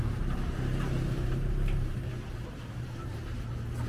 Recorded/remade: remade